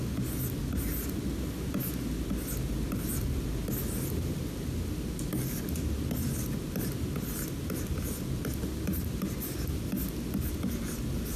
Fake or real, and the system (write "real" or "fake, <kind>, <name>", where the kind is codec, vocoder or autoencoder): real